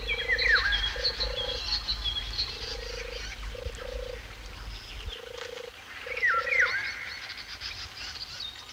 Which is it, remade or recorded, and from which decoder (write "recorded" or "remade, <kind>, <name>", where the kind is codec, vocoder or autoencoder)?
recorded